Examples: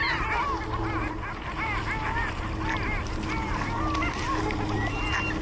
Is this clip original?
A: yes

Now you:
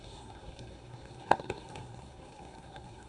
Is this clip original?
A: no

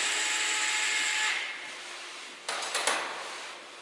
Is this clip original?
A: yes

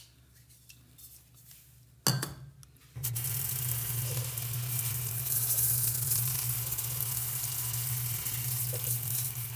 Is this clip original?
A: yes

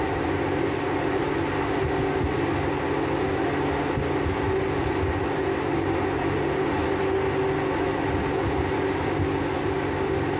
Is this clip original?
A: yes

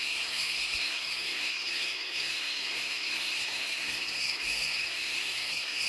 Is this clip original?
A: no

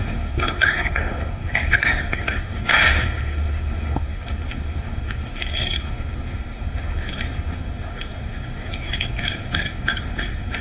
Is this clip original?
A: no